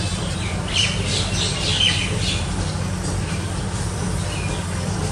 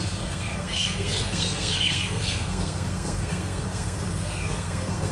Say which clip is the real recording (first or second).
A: first